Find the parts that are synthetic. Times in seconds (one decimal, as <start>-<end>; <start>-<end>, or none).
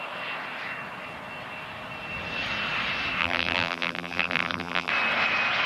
3.2-4.9